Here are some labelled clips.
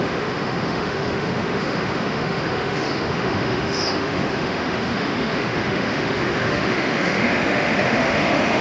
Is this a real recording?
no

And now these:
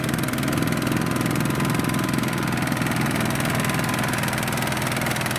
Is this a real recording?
yes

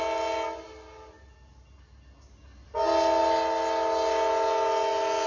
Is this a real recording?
yes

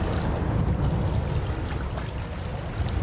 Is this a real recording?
yes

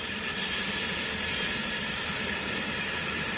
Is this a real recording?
yes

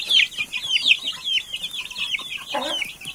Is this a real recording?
yes